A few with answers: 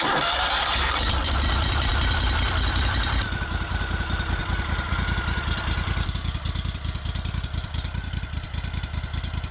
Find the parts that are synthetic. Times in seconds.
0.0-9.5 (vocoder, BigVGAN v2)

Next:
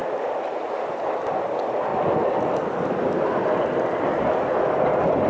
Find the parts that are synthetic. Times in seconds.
none

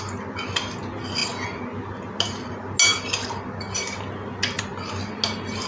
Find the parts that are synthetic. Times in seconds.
none

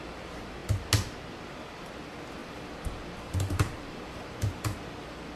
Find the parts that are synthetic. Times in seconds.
0.0-0.6 (vocoder, BigVGAN v2); 1.4-5.4

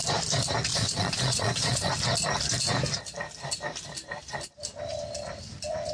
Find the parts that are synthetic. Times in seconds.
0.7-1.9 (vocoder, Vocos)